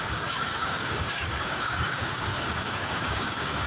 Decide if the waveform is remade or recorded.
remade